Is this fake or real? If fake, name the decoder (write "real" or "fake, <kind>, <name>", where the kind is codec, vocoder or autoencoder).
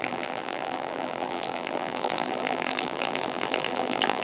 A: fake, vocoder, BigVGAN v2